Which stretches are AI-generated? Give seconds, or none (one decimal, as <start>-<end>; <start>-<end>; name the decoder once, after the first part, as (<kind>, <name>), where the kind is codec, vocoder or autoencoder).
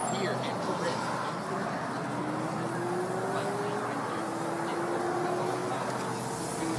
none